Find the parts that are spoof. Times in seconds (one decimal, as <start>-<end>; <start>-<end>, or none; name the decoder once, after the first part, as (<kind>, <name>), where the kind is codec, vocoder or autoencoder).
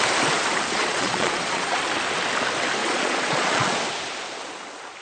0.8-1.8 (vocoder, Vocos); 2.8-3.8